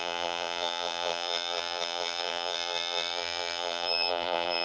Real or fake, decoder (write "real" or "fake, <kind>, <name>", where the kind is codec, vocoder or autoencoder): fake, vocoder, BigVGAN v2